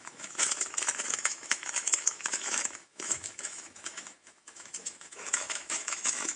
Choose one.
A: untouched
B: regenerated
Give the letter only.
B